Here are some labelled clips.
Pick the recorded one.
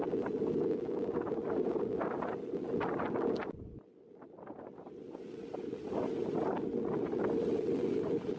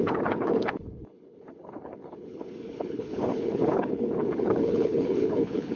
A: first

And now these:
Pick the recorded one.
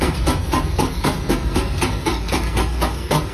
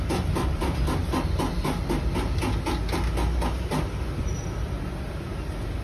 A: second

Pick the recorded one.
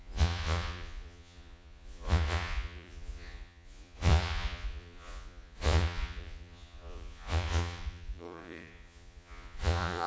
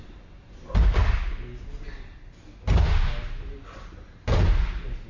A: second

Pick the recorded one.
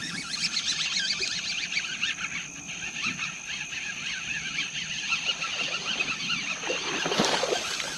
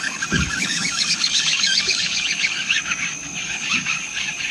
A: first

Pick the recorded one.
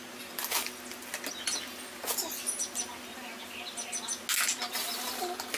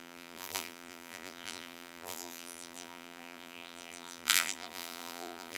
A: first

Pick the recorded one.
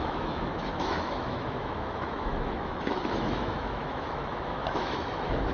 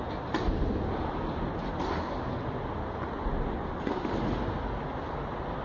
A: second